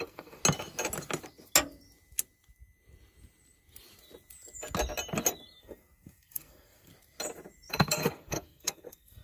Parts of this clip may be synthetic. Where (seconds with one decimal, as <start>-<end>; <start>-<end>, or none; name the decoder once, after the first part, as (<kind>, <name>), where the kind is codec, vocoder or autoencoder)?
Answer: 0.0-0.4 (codec, SNAC); 5.6-6.9; 7.7-9.2